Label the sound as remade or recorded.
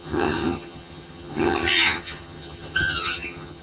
remade